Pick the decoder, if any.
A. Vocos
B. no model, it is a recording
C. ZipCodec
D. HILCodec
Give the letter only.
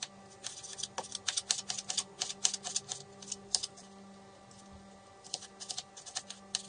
B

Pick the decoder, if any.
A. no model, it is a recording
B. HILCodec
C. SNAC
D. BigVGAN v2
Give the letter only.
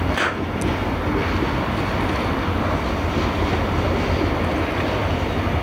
A